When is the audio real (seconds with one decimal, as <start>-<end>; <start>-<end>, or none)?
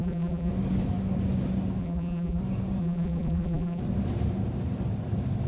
0.5-1.8; 2.4-2.8; 3.8-5.5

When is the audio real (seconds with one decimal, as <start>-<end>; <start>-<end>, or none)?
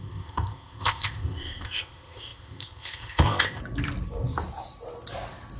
3.6-5.6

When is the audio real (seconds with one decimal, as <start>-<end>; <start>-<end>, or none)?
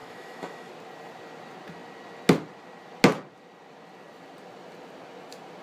0.7-5.6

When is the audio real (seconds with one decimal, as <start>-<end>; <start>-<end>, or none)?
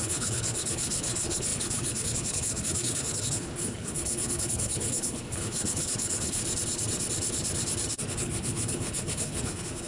6.4-8.1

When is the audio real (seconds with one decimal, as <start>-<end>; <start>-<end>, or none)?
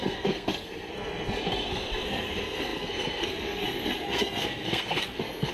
none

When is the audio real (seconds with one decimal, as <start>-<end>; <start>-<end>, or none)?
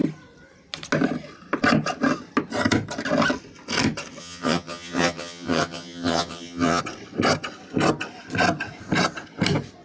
0.0-4.2; 6.8-9.8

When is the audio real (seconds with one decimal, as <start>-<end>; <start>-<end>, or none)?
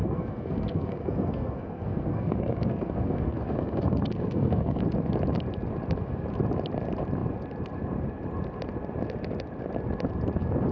4.8-10.7